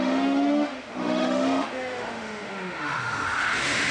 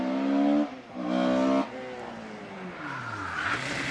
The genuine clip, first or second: second